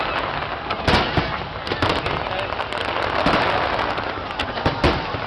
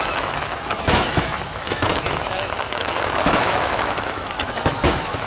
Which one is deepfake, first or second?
second